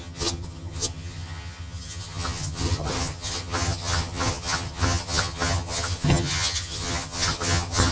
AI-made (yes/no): yes